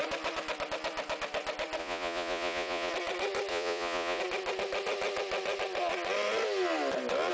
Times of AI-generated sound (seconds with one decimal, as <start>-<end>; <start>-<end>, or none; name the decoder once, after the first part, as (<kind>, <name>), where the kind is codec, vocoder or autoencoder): 1.8-2.9 (vocoder, Vocos); 3.5-4.2